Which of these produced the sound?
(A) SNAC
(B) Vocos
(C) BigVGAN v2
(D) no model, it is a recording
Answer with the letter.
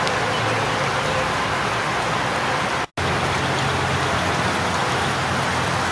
D